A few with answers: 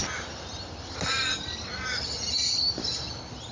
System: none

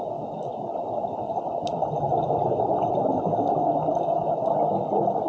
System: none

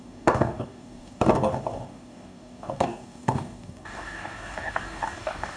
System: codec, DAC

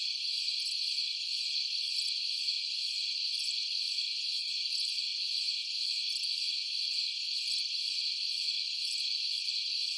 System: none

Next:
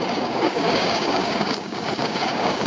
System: codec, DAC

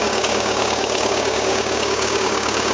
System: codec, DAC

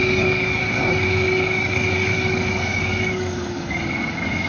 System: codec, DAC